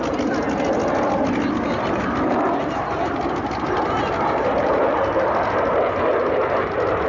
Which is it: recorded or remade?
recorded